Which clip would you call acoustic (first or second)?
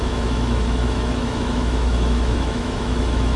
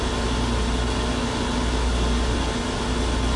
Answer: second